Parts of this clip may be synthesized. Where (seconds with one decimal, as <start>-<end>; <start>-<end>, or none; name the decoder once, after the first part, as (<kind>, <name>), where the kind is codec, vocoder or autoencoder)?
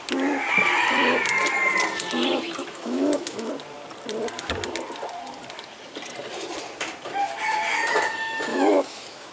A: 2.6-3.5 (autoencoder, DAC-VAE); 8.5-9.3